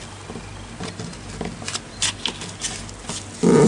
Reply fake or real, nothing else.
real